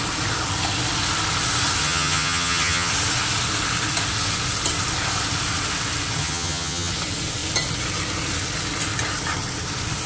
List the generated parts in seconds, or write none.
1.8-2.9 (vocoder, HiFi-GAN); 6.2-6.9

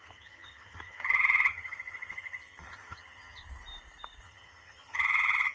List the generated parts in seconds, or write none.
0.0-3.4 (vocoder, HiFi-GAN); 4.2-5.5

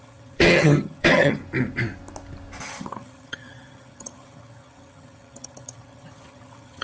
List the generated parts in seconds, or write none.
0.0-1.4 (vocoder, HiFi-GAN); 2.6-6.8

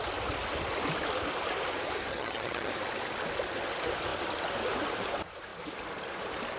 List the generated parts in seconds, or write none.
2.1-2.7 (vocoder, HiFi-GAN)

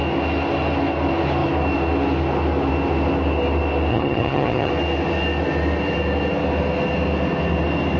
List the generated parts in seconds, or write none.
3.9-4.7 (vocoder, HiFi-GAN)

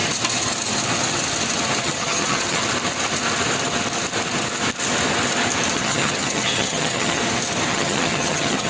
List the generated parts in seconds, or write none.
1.8-2.6 (vocoder, HiFi-GAN); 5.7-7.2; 7.7-8.7

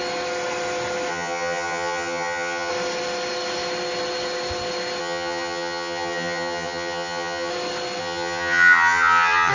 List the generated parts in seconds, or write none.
1.1-2.7 (vocoder, HiFi-GAN); 5.0-7.5; 8.0-9.5